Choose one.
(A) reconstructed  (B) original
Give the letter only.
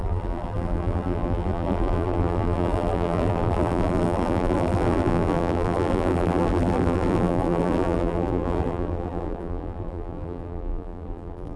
A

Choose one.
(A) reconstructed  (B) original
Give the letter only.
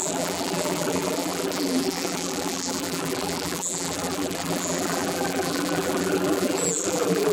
A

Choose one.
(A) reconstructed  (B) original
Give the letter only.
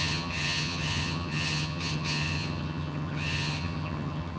A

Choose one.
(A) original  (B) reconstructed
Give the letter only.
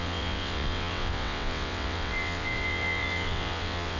B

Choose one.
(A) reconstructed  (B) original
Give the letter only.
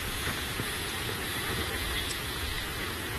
A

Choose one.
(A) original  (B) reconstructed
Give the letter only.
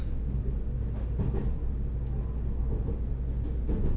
A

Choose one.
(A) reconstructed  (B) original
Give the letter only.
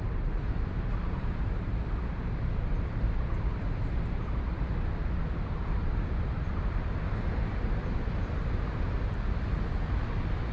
B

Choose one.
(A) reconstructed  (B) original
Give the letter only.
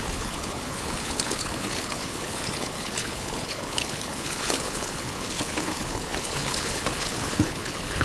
A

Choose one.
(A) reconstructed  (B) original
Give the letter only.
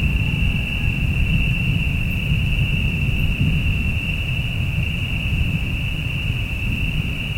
A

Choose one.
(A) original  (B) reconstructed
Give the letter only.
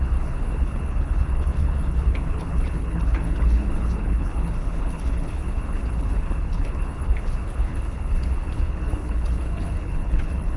B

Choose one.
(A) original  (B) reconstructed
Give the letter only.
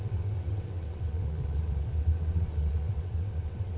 B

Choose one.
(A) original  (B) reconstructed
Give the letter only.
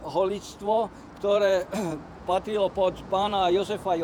B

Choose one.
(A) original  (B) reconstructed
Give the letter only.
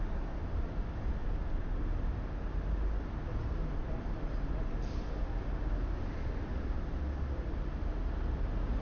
A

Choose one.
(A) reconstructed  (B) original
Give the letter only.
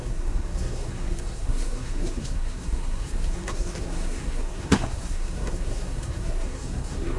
A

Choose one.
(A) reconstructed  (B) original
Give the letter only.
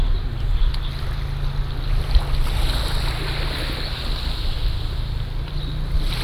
B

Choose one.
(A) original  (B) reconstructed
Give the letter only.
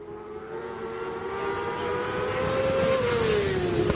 A